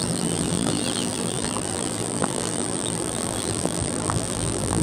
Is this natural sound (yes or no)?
no